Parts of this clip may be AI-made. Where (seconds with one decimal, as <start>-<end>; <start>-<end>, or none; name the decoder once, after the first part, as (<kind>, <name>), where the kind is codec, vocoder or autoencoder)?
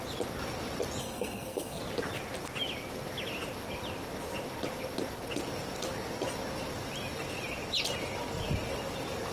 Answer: 1.0-1.8 (codec, SNAC)